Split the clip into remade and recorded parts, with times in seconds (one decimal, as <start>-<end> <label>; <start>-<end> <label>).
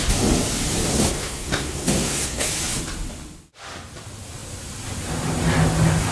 0.0-0.9 recorded; 0.9-2.5 remade; 2.5-6.1 recorded